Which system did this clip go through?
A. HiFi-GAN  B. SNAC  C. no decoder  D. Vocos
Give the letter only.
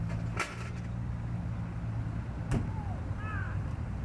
C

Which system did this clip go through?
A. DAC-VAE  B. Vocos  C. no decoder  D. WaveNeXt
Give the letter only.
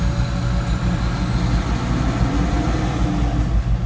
C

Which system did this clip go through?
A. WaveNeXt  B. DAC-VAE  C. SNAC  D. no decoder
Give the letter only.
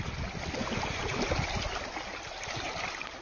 D